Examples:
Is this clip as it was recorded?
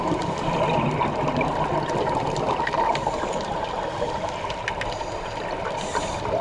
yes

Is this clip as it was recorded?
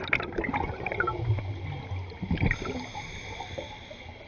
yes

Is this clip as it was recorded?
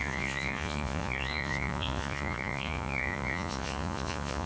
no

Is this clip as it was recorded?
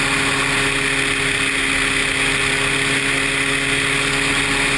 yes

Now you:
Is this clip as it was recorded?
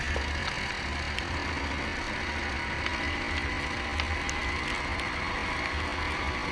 yes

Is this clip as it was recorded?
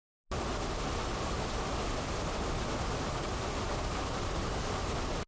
yes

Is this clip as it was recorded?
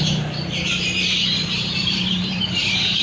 no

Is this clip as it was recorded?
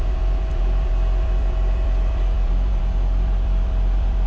no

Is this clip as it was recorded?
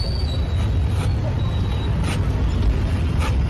yes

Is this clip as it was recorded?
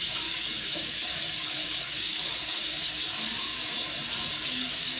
no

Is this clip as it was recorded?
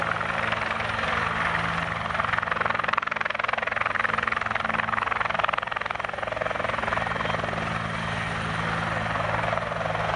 yes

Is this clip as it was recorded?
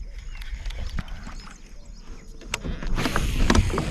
yes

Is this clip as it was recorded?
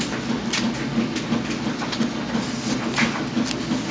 yes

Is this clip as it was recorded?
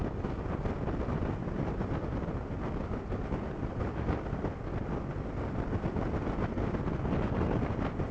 yes